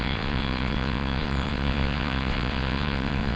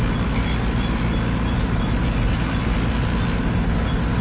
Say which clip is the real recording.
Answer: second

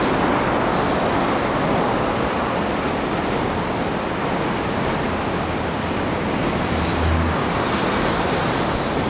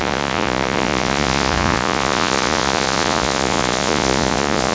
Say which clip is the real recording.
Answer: first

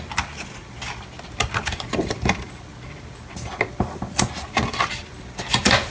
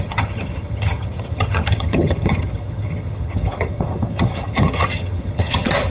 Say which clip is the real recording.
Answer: first